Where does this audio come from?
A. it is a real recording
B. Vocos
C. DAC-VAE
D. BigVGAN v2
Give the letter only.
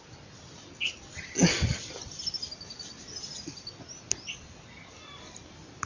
A